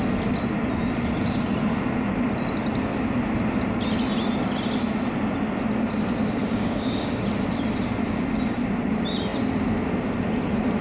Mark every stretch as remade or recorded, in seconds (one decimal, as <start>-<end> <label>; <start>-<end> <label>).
0.0-6.4 recorded; 6.4-7.2 remade; 7.2-10.8 recorded